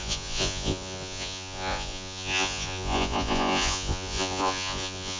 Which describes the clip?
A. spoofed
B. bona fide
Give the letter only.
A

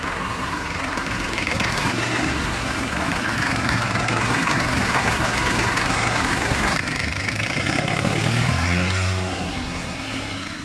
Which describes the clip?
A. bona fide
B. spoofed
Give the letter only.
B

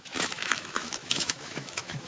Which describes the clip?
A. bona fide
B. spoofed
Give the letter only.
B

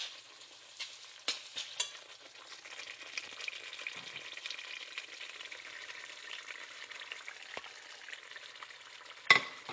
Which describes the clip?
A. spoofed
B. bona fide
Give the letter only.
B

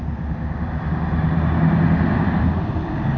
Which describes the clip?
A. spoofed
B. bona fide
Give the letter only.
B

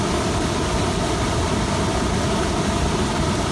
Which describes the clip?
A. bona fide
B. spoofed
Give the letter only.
A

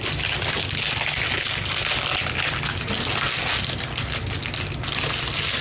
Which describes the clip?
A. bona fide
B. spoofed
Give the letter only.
A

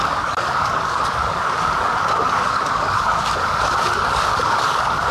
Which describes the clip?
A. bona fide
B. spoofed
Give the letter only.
B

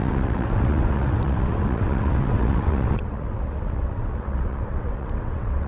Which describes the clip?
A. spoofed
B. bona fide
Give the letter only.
A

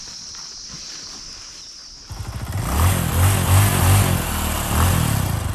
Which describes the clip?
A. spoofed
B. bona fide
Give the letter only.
B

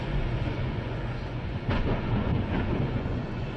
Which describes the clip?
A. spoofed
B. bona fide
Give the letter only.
A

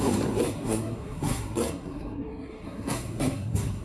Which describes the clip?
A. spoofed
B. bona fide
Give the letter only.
A